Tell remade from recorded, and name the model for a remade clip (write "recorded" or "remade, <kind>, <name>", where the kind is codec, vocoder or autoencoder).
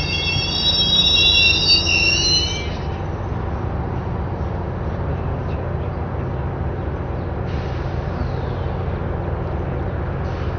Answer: recorded